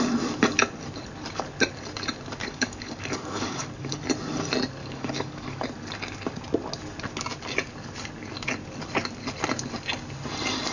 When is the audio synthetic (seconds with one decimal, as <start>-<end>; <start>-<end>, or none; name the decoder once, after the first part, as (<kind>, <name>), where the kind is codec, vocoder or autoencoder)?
2.4-4.0 (codec, DAC); 4.8-5.6